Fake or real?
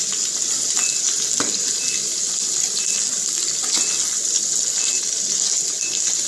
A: real